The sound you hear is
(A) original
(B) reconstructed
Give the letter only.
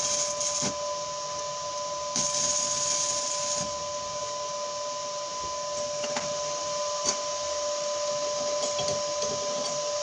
A